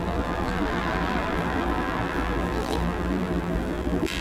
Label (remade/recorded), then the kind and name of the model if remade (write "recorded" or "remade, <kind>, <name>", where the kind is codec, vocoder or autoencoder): remade, vocoder, BigVGAN v2